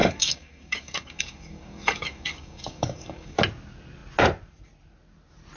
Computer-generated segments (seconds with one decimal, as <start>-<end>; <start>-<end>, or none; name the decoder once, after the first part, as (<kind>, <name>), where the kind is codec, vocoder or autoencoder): 0.0-3.4 (codec, DAC)